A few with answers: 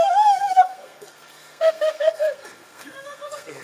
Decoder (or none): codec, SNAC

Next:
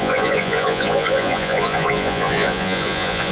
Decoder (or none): vocoder, Vocos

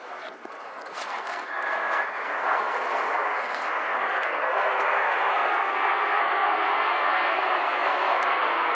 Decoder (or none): codec, SNAC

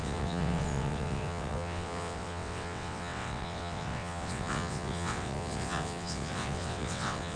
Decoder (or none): vocoder, WaveNeXt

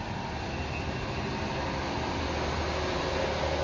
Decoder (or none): none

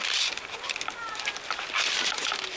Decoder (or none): none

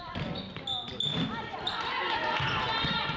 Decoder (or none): none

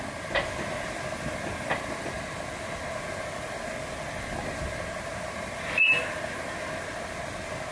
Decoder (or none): none